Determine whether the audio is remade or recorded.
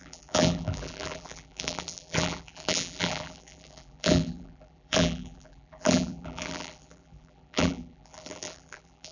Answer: remade